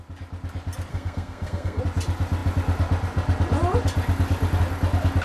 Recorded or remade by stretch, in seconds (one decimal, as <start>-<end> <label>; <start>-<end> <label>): 0.0-0.9 recorded; 0.9-1.8 remade; 1.8-5.2 recorded